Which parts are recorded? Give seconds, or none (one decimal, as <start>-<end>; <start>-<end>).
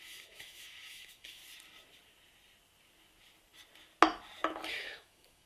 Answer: 1.4-4.7